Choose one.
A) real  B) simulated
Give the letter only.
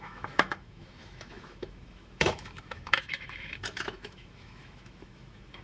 B